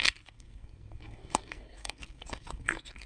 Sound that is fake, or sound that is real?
fake